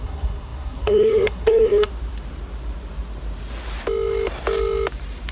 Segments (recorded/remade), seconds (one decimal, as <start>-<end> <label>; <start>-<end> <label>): 0.0-1.9 remade; 1.9-5.3 recorded